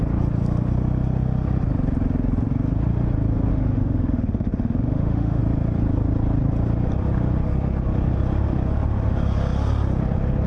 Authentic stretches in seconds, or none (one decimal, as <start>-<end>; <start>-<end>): 0.0-3.5; 5.4-10.5